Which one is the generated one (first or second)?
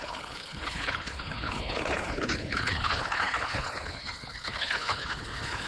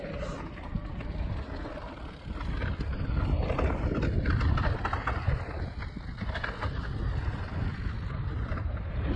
first